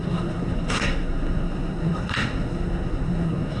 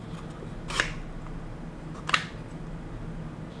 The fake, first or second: first